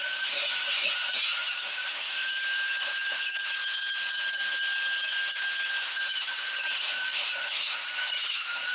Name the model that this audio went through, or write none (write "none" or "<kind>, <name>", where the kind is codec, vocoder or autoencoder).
autoencoder, DAC-VAE